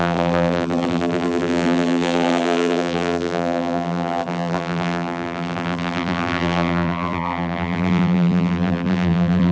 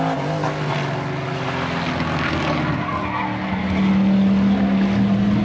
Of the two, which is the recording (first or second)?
second